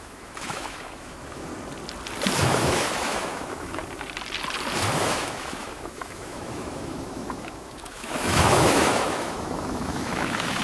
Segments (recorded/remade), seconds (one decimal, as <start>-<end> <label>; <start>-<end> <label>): 0.0-1.5 remade; 1.5-2.4 recorded; 2.4-3.8 remade; 3.8-5.0 recorded; 5.0-10.6 remade